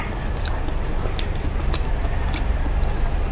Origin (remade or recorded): recorded